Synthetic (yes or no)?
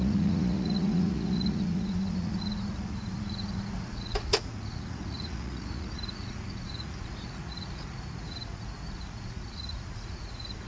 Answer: yes